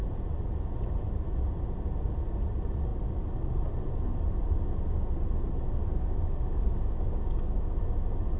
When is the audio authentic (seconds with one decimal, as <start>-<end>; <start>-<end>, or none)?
0.0-5.8; 7.7-8.4

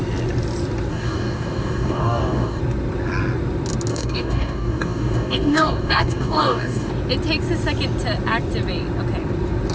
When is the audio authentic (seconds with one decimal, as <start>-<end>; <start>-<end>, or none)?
0.0-0.9; 2.6-3.9; 6.9-9.7

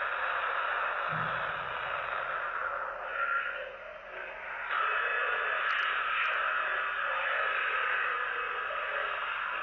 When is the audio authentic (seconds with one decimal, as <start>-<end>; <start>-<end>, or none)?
0.0-9.6

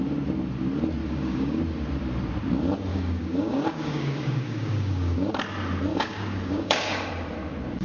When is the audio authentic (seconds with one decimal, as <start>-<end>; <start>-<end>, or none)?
0.0-1.0; 1.6-2.9; 5.3-5.9; 7.1-7.8

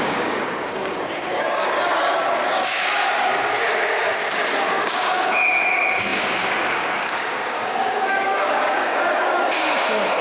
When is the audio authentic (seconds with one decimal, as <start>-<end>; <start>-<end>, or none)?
none

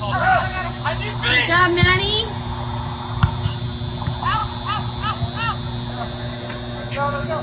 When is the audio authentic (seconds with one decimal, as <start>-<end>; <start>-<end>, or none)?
0.0-7.4

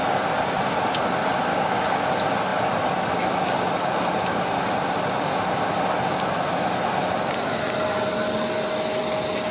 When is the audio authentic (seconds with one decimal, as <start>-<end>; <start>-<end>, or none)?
0.0-1.5; 2.1-9.5

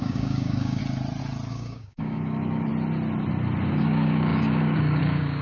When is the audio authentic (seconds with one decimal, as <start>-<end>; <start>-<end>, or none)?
0.8-1.5; 2.7-3.7